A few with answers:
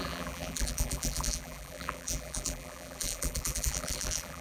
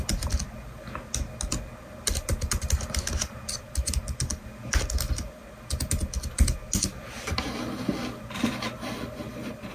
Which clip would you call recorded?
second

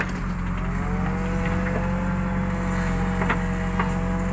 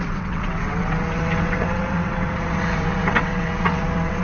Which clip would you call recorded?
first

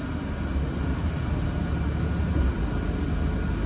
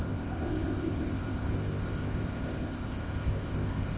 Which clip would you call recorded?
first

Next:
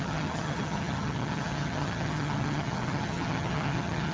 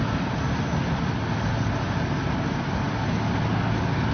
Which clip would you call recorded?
second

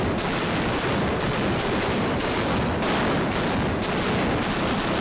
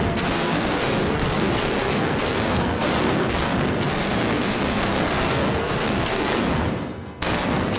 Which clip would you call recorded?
first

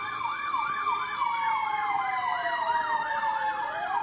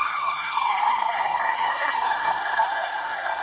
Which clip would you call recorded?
first